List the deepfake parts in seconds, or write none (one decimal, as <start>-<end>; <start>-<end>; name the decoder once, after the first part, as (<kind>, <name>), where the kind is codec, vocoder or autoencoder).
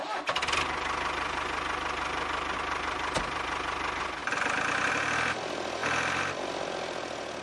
none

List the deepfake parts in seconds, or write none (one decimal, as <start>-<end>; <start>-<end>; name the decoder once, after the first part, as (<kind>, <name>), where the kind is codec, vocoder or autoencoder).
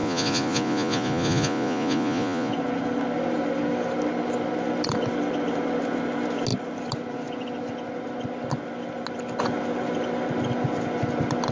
0.0-2.5 (vocoder, Vocos)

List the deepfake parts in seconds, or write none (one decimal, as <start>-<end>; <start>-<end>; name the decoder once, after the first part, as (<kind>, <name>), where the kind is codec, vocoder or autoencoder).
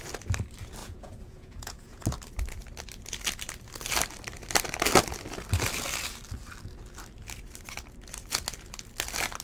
0.8-2.0 (vocoder, Vocos)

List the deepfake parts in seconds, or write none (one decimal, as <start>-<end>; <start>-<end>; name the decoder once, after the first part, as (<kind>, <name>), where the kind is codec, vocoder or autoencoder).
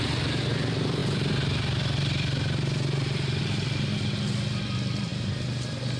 none